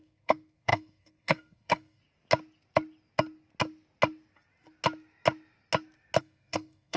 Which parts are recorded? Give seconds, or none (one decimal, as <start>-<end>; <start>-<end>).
2.0-6.2